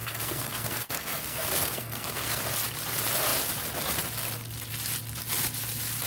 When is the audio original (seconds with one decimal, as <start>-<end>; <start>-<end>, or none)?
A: 2.4-6.1